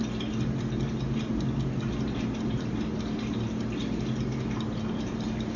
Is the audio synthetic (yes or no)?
no